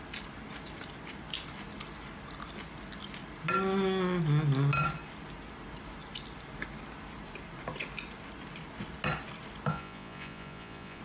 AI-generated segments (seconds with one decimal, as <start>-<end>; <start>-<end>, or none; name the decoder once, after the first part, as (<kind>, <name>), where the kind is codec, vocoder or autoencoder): 9.7-11.0 (vocoder, Vocos)